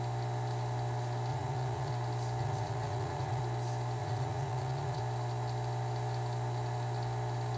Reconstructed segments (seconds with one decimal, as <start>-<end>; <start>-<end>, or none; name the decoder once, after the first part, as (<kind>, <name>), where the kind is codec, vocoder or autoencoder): 1.3-1.9 (vocoder, Vocos); 2.4-3.4; 4.0-5.0